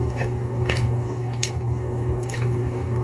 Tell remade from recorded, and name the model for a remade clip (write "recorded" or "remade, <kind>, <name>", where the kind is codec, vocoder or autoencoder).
remade, codec, DAC